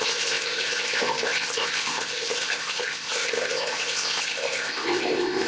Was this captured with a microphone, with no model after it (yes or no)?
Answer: no